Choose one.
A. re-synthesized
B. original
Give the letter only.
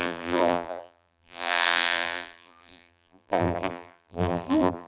A